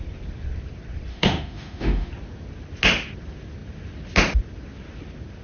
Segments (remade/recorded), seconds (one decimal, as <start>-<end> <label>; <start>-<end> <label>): 0.0-1.1 recorded; 1.1-2.1 remade; 2.1-5.4 recorded